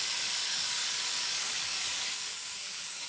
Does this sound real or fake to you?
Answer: fake